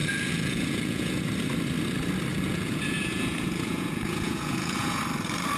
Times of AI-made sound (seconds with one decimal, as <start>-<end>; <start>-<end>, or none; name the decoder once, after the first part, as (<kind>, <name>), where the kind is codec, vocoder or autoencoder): 0.0-1.2 (vocoder, Vocos); 2.3-5.0